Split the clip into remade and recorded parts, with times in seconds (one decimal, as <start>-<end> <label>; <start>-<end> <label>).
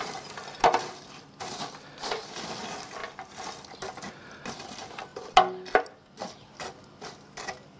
0.0-7.8 recorded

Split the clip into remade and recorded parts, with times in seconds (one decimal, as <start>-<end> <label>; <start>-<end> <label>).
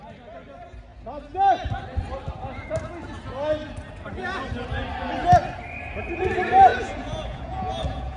0.0-6.7 recorded; 6.7-8.2 remade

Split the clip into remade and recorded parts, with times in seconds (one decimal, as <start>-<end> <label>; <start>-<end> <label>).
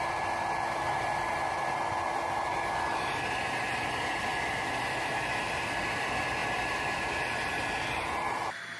0.0-8.8 recorded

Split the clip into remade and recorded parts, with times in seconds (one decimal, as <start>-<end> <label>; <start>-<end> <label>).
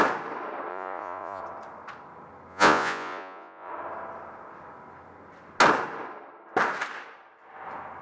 0.0-0.7 recorded; 0.7-1.4 remade; 1.4-2.5 recorded; 2.5-3.7 remade; 3.7-8.0 recorded